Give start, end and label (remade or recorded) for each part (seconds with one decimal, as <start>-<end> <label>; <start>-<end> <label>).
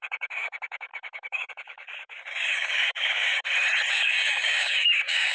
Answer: 0.0-3.4 remade; 3.4-3.9 recorded; 3.9-5.3 remade